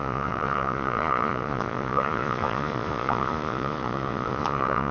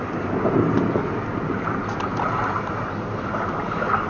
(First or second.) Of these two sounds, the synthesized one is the first